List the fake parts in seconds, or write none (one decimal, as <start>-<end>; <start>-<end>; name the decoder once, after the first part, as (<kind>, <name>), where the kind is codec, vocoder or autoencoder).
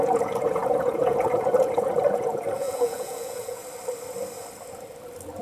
0.0-3.6 (vocoder, Vocos)